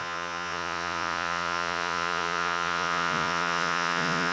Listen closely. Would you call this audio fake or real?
fake